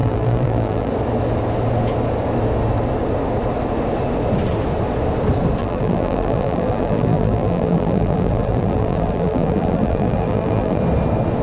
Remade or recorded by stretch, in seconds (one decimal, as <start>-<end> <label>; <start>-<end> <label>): 0.0-0.9 remade; 0.9-5.6 recorded; 5.6-10.8 remade; 10.8-11.4 recorded